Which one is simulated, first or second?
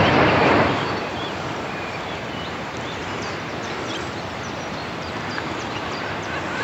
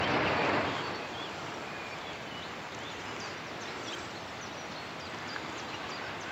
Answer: first